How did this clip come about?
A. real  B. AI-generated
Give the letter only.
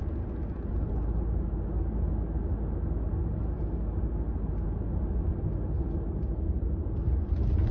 A